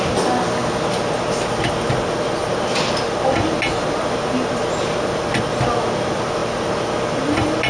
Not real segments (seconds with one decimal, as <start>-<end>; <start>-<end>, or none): none